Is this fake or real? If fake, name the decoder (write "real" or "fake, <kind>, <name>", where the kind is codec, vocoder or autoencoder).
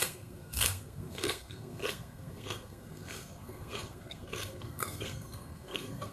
fake, codec, SNAC